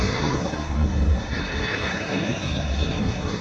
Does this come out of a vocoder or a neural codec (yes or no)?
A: yes